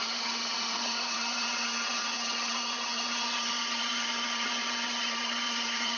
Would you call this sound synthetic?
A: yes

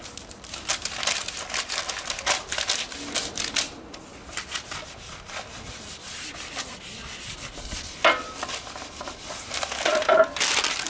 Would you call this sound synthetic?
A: no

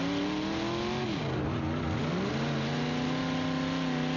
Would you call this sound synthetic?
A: no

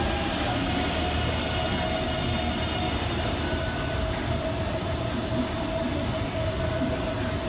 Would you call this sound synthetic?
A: no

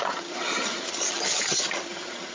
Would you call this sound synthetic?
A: yes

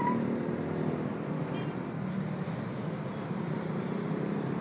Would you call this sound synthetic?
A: no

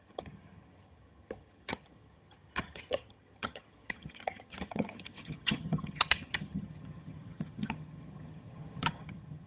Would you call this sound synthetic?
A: yes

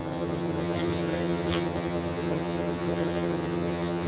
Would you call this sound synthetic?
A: yes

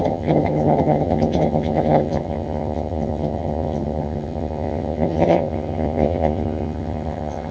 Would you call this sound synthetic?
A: yes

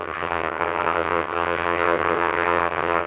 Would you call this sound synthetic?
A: yes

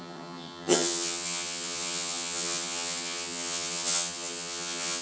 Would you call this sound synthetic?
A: yes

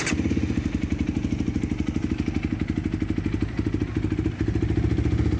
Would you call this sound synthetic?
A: no